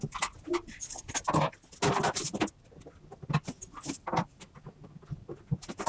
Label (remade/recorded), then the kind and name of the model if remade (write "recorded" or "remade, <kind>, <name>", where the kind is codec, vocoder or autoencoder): recorded